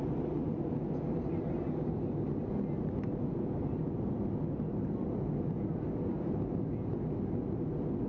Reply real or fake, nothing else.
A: real